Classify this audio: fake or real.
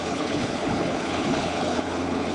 fake